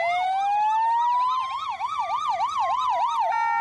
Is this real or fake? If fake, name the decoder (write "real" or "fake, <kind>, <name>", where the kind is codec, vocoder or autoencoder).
real